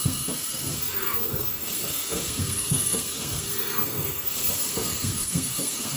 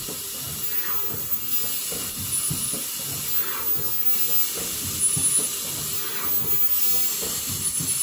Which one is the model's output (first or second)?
first